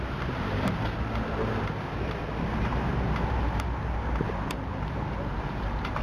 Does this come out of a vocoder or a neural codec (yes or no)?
yes